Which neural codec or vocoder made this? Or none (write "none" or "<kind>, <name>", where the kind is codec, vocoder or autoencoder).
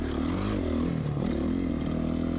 none